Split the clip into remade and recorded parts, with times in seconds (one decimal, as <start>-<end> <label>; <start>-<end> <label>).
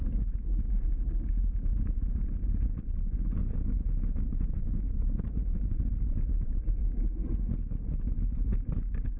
0.0-3.4 remade; 3.4-4.6 recorded; 4.6-6.8 remade; 6.8-9.2 recorded